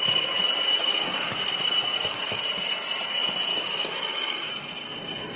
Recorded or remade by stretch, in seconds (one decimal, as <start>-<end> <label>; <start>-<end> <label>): 0.0-0.8 recorded; 0.8-1.3 remade; 1.3-1.9 recorded; 1.9-2.4 remade; 2.4-3.5 recorded; 3.5-4.5 remade; 4.5-5.4 recorded